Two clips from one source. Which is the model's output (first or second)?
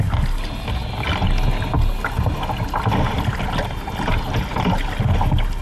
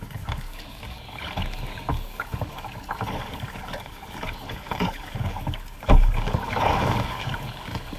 second